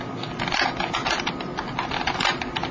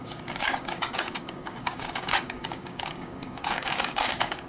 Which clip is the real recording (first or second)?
first